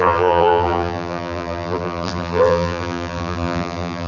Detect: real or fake fake